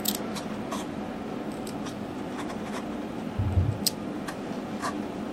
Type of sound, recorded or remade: recorded